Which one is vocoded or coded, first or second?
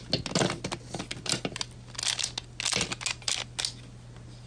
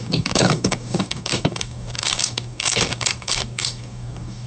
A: second